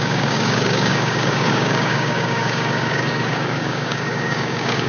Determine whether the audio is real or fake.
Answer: fake